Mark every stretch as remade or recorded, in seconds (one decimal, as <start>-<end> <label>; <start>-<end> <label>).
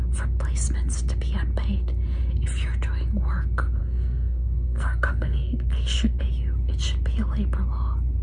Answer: 0.0-3.8 recorded; 3.8-6.2 remade; 6.2-8.2 recorded